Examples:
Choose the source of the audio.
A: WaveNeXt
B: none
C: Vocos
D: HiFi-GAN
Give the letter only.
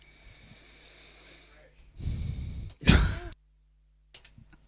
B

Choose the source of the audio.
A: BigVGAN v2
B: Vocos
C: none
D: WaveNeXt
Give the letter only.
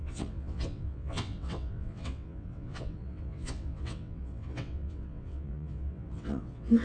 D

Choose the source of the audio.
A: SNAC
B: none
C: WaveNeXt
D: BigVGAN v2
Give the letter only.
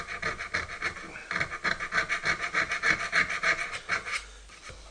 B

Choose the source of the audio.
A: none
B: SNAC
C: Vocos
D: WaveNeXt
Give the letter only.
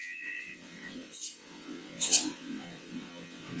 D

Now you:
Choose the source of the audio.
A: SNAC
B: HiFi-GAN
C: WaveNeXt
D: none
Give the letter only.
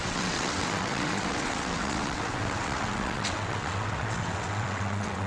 C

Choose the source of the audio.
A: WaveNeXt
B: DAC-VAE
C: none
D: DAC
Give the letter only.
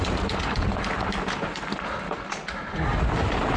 C